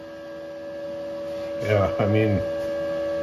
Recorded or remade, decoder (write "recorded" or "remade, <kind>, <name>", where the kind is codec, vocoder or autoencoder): recorded